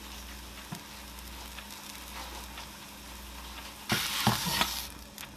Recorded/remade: recorded